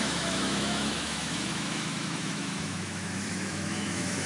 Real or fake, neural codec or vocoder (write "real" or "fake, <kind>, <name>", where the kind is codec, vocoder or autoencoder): fake, autoencoder, DAC-VAE